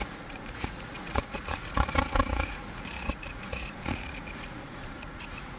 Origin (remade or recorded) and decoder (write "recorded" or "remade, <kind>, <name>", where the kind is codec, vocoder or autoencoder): remade, vocoder, Vocos